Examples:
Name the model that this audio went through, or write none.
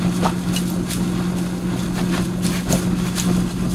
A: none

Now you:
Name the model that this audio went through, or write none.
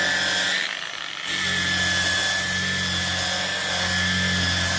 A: none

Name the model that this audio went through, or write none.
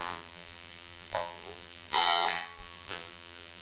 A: vocoder, BigVGAN v2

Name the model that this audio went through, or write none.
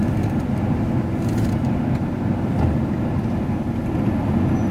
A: none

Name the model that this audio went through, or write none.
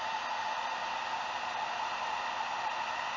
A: none